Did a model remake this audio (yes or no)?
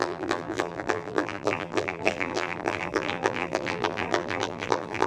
yes